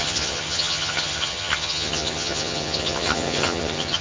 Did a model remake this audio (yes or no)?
yes